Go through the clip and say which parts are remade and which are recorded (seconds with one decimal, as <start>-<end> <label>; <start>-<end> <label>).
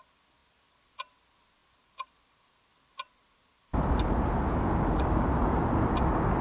0.0-6.4 recorded